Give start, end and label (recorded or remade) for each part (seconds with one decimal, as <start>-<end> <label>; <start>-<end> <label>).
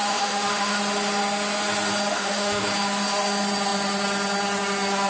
0.0-0.8 remade; 0.8-2.1 recorded; 2.1-2.6 remade; 2.6-5.1 recorded